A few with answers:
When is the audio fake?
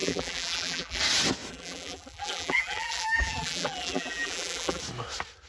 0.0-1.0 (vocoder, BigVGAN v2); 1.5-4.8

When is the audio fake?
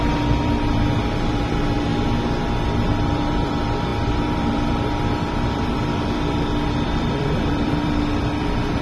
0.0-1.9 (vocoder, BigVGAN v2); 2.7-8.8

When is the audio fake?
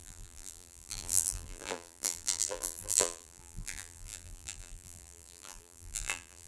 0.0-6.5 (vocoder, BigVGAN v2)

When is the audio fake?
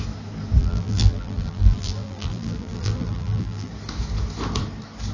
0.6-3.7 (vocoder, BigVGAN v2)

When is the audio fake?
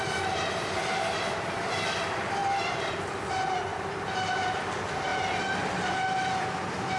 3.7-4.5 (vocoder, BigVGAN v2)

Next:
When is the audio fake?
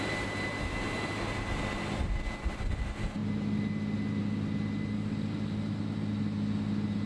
none